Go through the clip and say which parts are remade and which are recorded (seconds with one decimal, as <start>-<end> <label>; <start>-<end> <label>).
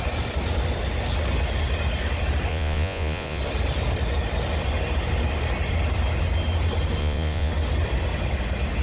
0.0-2.5 recorded; 2.5-3.4 remade; 3.4-7.0 recorded; 7.0-7.5 remade; 7.5-8.8 recorded